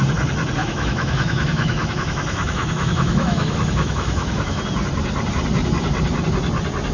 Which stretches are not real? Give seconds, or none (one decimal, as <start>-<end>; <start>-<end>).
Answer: 0.6-4.6

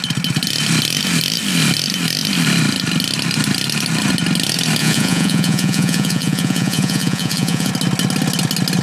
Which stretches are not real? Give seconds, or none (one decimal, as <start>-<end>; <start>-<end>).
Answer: 4.8-7.7

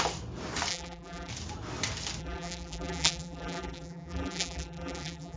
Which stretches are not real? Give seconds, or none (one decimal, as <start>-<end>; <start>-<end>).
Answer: 0.7-1.3; 2.2-5.4